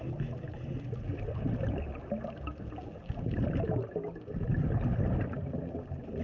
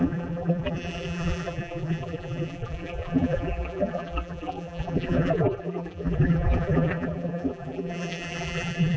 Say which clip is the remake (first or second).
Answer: second